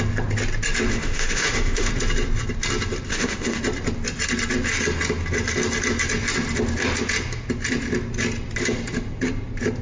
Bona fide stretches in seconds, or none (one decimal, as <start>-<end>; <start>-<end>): 0.0-0.9; 1.9-3.1; 3.6-9.8